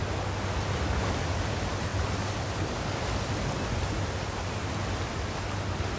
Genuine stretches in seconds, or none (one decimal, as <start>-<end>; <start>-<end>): 0.0-6.0